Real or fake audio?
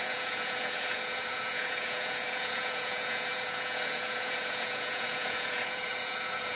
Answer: fake